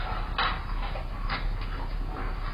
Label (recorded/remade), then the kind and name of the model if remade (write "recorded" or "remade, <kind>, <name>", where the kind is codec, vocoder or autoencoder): recorded